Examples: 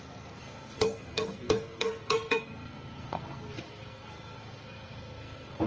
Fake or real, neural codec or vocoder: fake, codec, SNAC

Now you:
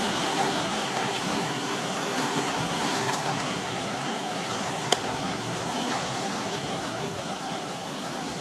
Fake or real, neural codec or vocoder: fake, codec, SNAC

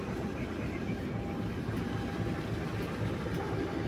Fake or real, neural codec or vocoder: real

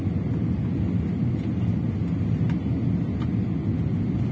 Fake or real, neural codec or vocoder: real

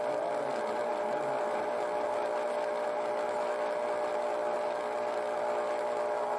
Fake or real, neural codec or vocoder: real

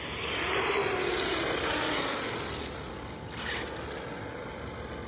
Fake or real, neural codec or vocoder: real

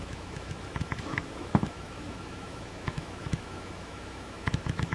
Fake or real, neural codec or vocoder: fake, autoencoder, DAC-VAE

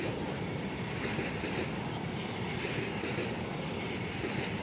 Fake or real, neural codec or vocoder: real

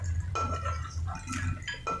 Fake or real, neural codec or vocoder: real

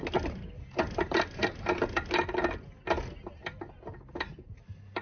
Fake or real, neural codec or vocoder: real